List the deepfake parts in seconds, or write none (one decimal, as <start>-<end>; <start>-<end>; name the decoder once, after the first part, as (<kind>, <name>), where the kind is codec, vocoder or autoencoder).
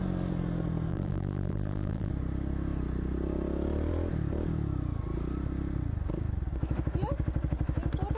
0.9-2.1 (vocoder, BigVGAN v2)